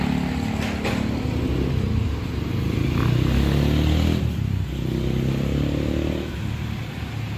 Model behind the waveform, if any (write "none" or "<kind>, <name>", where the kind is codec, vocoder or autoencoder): none